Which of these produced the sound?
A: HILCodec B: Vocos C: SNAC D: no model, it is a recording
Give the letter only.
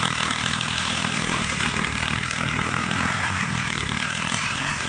C